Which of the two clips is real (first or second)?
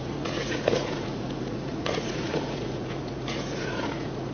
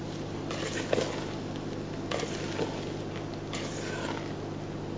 second